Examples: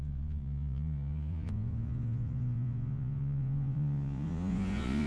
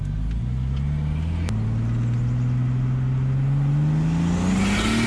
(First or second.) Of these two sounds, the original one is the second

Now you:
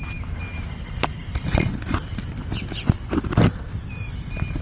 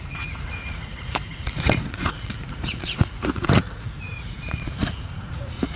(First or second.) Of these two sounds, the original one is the first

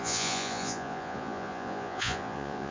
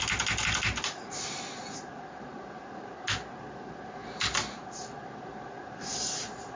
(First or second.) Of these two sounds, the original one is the second